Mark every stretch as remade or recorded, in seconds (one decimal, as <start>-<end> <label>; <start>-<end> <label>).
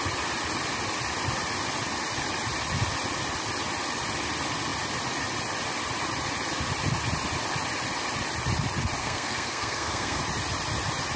0.0-9.0 recorded; 9.0-10.2 remade; 10.2-11.2 recorded